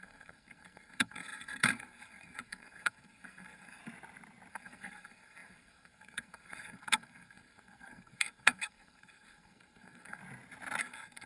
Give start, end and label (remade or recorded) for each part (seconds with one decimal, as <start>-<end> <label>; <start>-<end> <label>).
0.0-3.8 remade; 3.8-4.5 recorded; 4.5-10.2 remade; 10.2-10.8 recorded; 10.8-11.3 remade